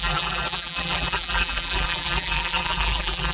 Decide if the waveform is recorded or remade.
remade